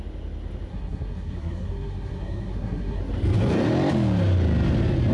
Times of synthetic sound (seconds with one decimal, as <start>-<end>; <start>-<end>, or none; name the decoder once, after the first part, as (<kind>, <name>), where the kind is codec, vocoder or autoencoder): 0.7-3.0 (codec, SNAC)